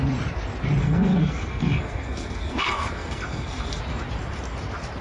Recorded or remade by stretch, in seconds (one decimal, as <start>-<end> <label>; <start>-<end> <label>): 0.0-0.8 recorded; 0.8-3.8 remade; 3.8-5.0 recorded